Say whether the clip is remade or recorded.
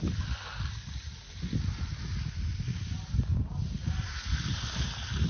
recorded